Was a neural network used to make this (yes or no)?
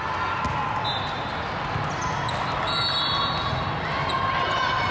no